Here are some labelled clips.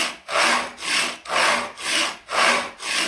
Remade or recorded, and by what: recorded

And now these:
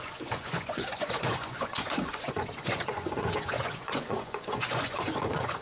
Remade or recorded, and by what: remade, vocoder, Vocos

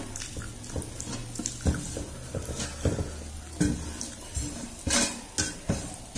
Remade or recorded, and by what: recorded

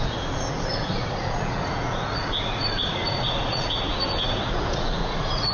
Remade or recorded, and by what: remade, vocoder, Vocos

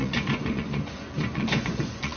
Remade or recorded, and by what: remade, vocoder, Vocos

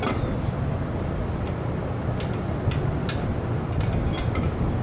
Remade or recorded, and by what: recorded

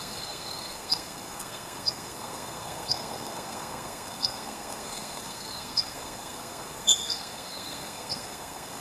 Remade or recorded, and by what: remade, codec, SNAC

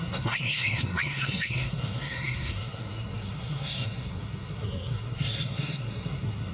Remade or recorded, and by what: remade, codec, SNAC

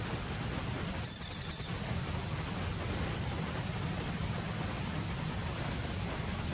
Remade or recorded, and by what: remade, vocoder, BigVGAN v2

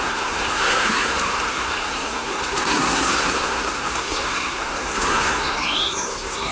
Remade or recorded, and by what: remade, codec, SNAC